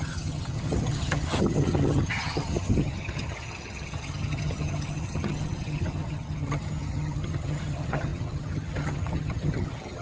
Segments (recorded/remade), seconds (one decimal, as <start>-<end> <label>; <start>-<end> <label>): 0.0-10.0 remade